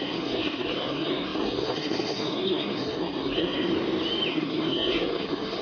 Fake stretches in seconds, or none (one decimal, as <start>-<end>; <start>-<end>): 0.0-3.7; 4.3-5.6